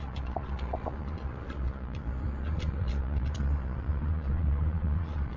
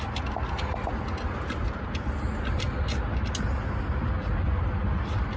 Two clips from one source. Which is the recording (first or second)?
second